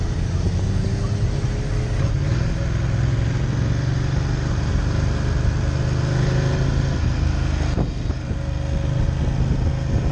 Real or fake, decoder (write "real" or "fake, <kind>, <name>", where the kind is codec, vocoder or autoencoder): real